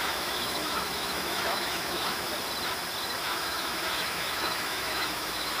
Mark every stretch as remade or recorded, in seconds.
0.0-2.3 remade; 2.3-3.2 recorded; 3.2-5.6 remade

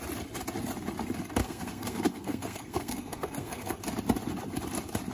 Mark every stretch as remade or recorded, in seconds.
0.0-1.4 recorded; 1.4-3.8 remade; 3.8-5.1 recorded

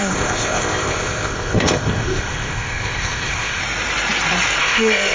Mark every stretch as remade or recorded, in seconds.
0.0-3.6 remade; 3.6-4.6 recorded; 4.6-5.1 remade

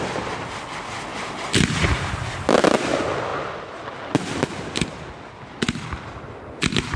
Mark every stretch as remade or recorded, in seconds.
0.0-1.1 recorded; 1.1-2.1 remade; 2.1-7.0 recorded

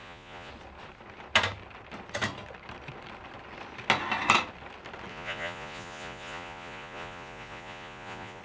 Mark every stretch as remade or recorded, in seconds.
0.0-0.5 remade; 0.5-5.1 recorded; 5.1-8.4 remade